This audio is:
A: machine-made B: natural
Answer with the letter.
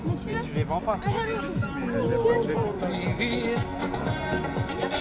B